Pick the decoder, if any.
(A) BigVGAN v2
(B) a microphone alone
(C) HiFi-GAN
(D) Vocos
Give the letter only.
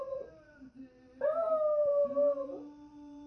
A